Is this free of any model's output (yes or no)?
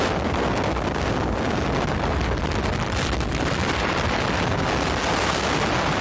yes